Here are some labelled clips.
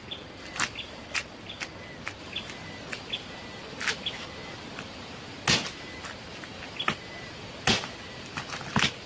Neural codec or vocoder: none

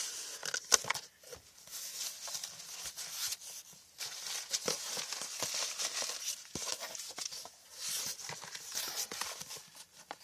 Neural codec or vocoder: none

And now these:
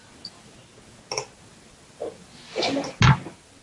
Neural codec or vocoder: none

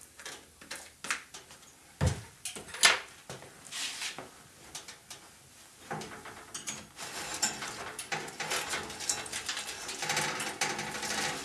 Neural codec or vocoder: none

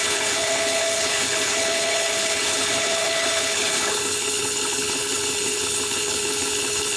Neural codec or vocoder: codec, HILCodec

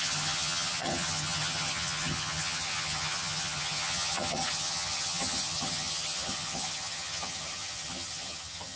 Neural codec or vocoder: vocoder, HiFi-GAN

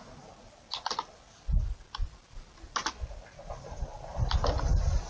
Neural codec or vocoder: none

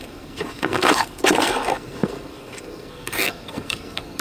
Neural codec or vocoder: codec, SNAC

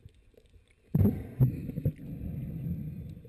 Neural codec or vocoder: none